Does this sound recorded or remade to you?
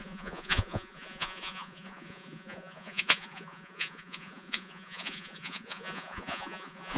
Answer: remade